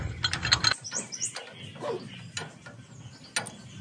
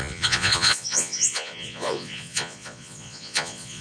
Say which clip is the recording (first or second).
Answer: first